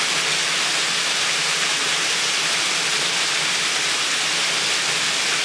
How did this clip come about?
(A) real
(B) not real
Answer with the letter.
A